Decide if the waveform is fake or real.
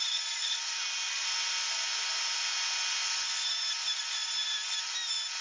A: real